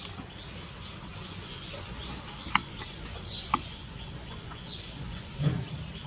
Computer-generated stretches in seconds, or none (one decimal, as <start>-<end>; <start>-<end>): 1.1-2.2; 2.6-5.5